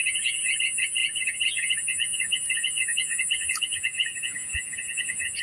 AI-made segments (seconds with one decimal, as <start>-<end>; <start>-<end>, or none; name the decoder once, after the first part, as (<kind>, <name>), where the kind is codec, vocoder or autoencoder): 0.0-5.4 (vocoder, Vocos)

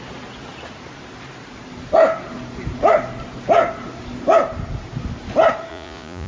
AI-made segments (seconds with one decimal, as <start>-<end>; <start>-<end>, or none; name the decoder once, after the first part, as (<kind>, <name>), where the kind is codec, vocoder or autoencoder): 5.7-6.3 (vocoder, Vocos)

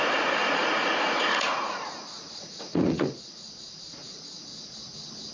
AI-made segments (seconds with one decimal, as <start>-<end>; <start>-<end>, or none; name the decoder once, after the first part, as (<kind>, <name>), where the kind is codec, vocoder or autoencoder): 0.0-4.5 (vocoder, Vocos)

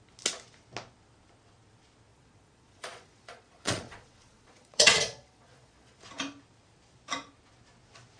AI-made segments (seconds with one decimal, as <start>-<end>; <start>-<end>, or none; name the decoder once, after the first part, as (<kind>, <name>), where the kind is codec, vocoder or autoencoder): 2.1-6.0 (vocoder, Vocos)

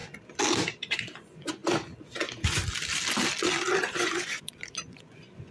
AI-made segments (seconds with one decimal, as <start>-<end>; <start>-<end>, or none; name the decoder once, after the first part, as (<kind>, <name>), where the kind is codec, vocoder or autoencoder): 0.9-1.6 (vocoder, Vocos); 2.2-2.6; 3.8-5.5

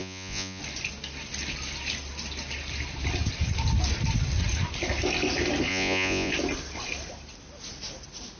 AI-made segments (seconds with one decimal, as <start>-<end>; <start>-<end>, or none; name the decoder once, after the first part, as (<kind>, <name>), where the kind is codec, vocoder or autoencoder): 0.0-0.6 (vocoder, Vocos); 5.7-6.3